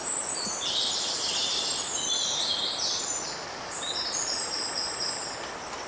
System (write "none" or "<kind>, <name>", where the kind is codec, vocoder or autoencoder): none